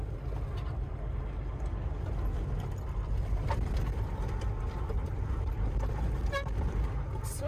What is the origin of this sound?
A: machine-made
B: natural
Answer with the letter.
B